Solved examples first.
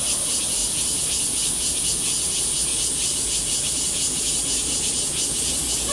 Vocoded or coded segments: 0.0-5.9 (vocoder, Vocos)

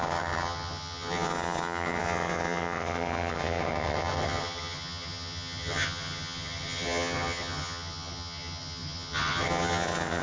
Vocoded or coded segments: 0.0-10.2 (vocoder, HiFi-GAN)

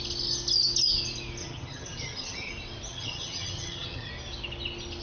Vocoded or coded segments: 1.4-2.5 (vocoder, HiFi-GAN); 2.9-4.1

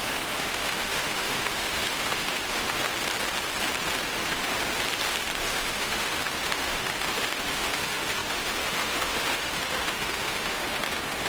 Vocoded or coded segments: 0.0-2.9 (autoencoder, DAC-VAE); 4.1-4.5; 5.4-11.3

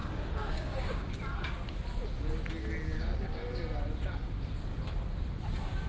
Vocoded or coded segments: 0.0-1.1 (codec, DAC); 2.9-3.6

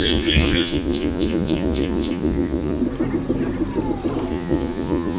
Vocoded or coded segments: 0.0-2.8 (vocoder, Vocos); 4.3-5.2

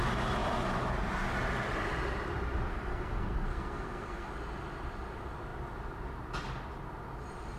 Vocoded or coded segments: 2.7-4.3 (codec, SNAC)